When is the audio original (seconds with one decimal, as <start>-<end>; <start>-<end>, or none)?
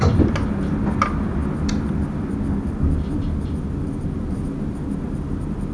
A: 0.0-5.7